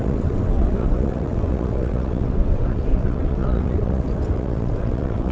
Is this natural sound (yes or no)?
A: no